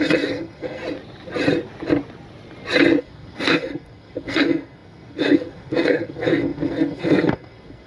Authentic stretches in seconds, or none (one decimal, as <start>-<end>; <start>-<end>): 0.8-3.0

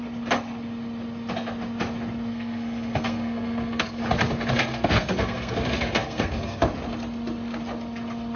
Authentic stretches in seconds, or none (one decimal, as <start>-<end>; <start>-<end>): 0.0-2.3; 4.0-4.5; 6.6-8.4

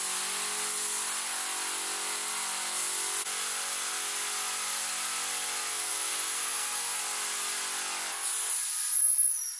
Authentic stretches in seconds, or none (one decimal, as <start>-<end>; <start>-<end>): 0.0-5.7; 7.0-9.6

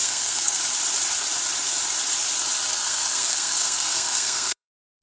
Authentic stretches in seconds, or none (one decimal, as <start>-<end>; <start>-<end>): 0.6-2.7

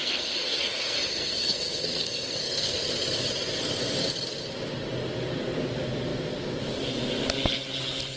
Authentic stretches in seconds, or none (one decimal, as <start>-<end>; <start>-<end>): 2.8-8.2